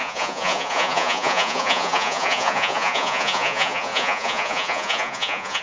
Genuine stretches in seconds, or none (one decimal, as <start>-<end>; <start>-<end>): none